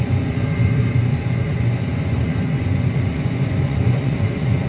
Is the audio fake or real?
fake